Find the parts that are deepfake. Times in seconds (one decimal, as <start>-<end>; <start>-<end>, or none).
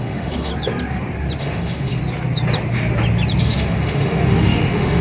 0.0-0.5; 1.4-2.0; 3.4-5.0